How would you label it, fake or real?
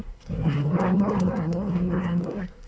fake